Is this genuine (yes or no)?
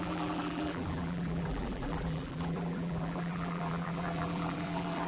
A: no